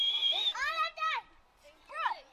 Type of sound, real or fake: fake